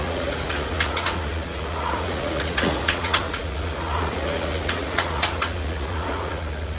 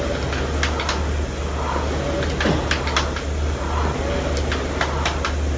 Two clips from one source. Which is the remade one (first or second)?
first